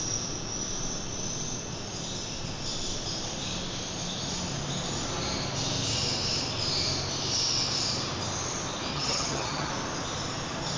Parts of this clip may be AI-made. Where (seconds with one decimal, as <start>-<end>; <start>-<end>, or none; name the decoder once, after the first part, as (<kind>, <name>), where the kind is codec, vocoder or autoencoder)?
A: 8.9-9.7 (vocoder, HiFi-GAN)